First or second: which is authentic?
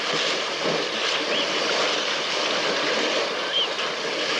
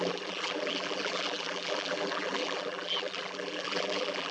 first